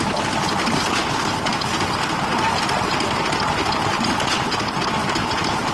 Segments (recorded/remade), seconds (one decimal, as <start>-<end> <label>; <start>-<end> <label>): 0.0-5.7 recorded